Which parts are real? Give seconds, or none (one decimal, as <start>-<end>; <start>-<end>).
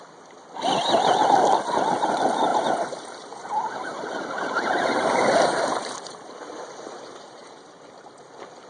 0.0-2.5; 7.7-8.7